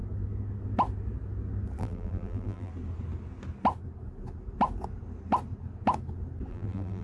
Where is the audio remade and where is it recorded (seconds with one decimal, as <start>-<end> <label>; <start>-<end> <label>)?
0.0-1.8 recorded; 1.8-2.7 remade; 2.7-6.5 recorded; 6.5-7.0 remade